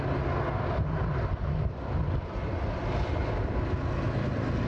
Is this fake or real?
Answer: real